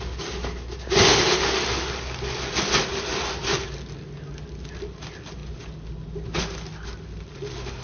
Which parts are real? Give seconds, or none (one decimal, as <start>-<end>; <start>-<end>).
0.0-7.8